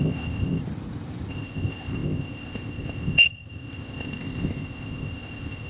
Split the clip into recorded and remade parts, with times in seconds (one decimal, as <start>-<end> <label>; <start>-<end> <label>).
0.0-0.6 remade; 0.6-1.3 recorded; 1.3-5.7 remade